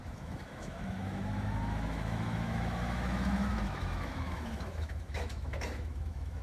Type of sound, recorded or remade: remade